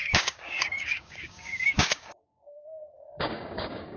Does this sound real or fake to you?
fake